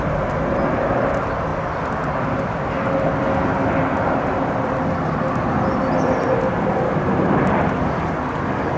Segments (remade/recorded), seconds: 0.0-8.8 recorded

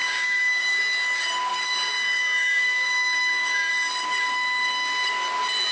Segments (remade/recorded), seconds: 0.0-0.8 remade; 0.8-1.5 recorded; 1.5-3.7 remade; 3.7-5.7 recorded